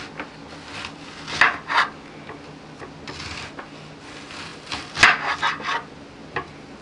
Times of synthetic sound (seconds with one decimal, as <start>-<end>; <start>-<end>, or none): none